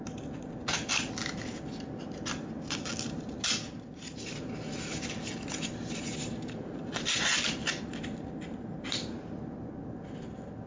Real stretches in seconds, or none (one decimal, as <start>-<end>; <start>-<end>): 0.0-10.7